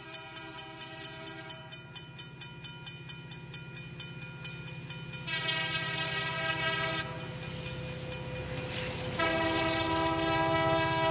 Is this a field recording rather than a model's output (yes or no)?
yes